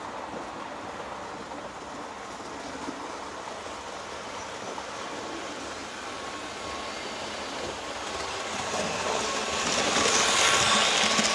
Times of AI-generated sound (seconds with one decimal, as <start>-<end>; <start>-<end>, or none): none